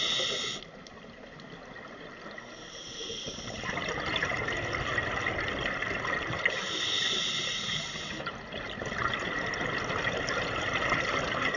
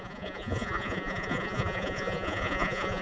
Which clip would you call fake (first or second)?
second